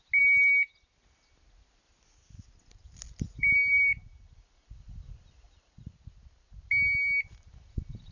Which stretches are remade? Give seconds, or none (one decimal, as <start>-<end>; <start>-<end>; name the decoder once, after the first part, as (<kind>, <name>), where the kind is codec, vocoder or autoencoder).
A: 3.4-5.9 (vocoder, BigVGAN v2)